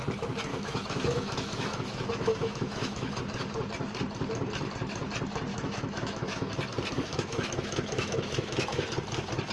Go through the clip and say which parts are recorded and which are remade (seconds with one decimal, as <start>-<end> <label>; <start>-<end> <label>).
0.0-0.5 recorded; 0.5-3.2 remade; 3.2-5.5 recorded; 5.5-6.5 remade; 6.5-7.1 recorded; 7.1-8.8 remade; 8.8-9.5 recorded